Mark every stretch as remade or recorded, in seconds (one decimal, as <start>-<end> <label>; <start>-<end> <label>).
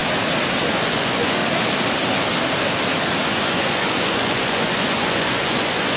0.0-0.7 recorded; 0.7-1.4 remade; 1.4-3.3 recorded; 3.3-6.0 remade